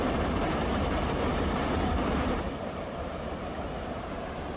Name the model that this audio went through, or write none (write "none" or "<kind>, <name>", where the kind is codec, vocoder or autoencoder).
vocoder, BigVGAN v2